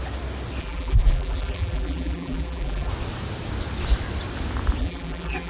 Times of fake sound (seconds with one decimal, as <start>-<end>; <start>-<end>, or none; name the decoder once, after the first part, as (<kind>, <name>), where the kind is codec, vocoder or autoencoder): 0.6-2.9 (vocoder, BigVGAN v2); 4.8-5.5